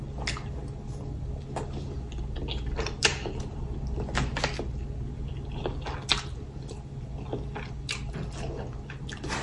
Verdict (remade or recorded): recorded